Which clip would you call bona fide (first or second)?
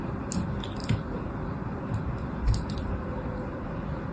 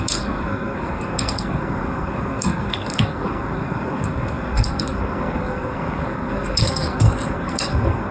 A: first